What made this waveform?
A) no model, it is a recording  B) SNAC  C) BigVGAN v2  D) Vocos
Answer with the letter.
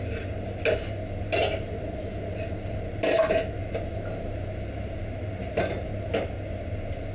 A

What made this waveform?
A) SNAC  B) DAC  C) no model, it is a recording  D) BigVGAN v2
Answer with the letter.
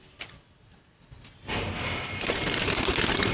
C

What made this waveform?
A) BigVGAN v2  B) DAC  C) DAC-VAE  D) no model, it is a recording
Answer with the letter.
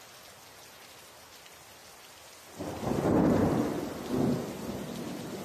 D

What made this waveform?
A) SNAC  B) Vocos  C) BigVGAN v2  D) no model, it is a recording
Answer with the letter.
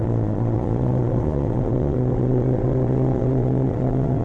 B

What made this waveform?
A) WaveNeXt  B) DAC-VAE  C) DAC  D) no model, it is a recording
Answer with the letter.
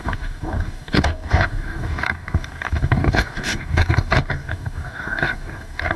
C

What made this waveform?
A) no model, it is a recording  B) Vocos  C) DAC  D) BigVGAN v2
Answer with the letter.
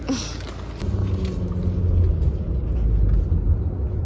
A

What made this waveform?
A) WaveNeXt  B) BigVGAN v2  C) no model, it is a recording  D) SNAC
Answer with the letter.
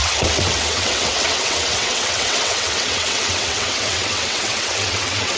A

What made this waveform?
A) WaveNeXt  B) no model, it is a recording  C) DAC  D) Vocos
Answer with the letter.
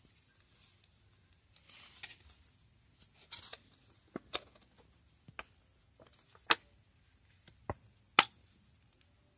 B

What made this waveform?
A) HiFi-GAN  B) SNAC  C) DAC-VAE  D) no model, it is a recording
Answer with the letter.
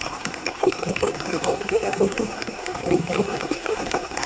B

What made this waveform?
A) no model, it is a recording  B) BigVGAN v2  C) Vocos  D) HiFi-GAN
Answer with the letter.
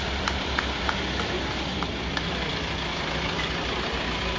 B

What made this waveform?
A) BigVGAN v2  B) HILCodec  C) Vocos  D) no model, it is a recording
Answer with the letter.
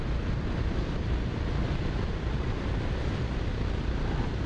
D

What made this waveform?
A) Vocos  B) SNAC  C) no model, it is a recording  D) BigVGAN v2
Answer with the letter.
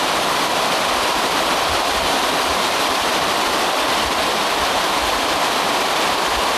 D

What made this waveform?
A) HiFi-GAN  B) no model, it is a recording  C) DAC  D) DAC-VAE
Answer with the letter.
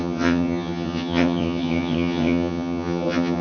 A